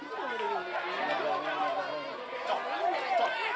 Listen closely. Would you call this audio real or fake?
real